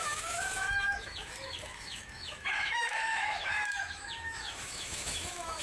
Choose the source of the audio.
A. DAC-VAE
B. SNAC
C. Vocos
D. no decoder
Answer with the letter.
A